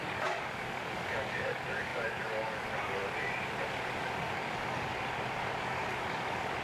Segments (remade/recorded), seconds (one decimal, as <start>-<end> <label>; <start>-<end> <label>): 0.0-3.0 remade; 3.0-4.0 recorded; 4.0-6.6 remade